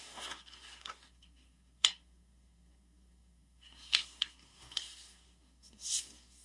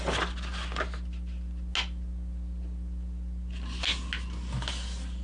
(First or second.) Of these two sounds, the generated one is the first